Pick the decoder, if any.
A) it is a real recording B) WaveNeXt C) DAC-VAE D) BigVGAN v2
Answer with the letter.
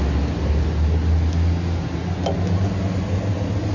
A